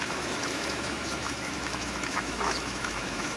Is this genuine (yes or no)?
no